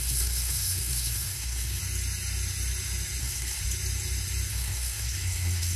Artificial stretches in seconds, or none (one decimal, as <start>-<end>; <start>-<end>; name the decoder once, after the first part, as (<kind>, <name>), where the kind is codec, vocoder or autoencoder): 0.0-1.8 (codec, SNAC); 3.2-3.6; 4.5-5.8